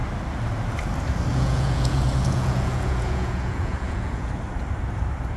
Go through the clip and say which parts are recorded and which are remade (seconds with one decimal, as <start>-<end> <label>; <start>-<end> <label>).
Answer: 0.0-1.3 recorded; 1.3-4.3 remade; 4.3-5.4 recorded